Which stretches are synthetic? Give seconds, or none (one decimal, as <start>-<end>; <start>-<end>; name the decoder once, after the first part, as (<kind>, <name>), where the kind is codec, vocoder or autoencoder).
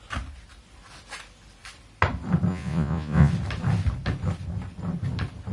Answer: 2.5-3.3 (vocoder, Vocos)